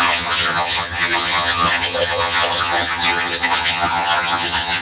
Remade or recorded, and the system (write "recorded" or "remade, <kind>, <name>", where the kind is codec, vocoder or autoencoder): remade, vocoder, HiFi-GAN